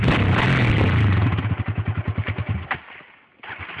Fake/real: real